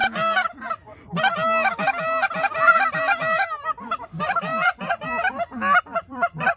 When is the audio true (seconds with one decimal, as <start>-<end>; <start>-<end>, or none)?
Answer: 0.0-4.0; 4.5-5.8